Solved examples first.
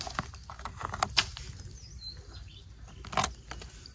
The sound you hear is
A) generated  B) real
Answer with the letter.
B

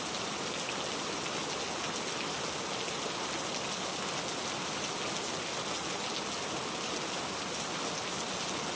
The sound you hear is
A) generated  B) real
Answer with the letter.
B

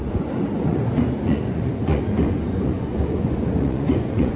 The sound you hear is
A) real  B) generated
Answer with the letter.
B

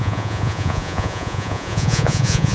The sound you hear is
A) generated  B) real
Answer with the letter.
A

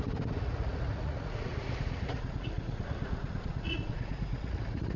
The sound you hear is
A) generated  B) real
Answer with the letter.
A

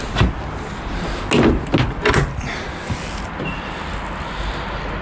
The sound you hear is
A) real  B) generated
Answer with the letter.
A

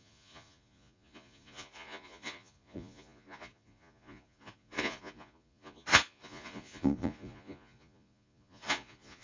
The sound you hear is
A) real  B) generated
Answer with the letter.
B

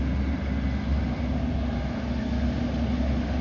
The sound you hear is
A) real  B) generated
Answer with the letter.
A